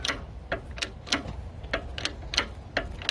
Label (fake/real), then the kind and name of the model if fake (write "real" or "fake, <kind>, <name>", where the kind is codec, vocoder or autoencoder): real